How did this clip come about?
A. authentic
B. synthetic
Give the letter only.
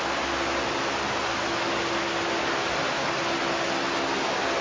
A